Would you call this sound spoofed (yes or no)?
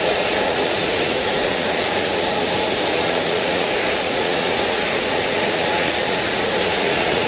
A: yes